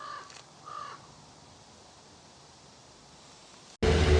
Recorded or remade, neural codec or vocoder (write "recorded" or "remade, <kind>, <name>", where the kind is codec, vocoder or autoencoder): recorded